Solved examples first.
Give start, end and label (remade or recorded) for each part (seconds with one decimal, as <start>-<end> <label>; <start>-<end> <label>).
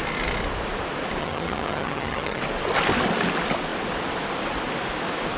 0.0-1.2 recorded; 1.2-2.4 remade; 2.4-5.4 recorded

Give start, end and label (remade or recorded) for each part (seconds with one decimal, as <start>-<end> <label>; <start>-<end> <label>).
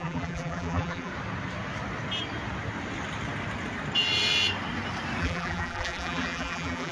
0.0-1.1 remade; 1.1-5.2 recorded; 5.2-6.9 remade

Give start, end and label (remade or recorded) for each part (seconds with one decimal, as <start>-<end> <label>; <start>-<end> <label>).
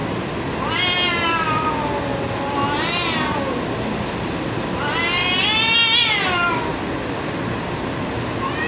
0.0-8.7 recorded